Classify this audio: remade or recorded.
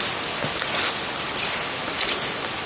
recorded